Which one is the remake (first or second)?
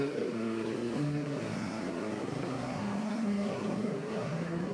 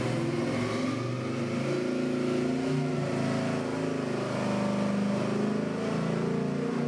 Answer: first